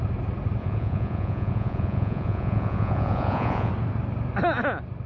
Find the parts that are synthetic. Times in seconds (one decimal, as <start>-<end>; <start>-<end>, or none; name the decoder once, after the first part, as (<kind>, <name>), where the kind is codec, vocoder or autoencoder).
0.6-3.7 (vocoder, Vocos)

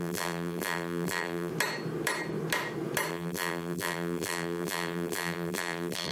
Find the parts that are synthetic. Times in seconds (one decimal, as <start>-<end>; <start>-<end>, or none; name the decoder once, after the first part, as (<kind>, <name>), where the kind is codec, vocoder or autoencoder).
0.0-1.5 (vocoder, BigVGAN v2); 3.1-6.1